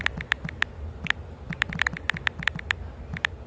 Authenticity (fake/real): real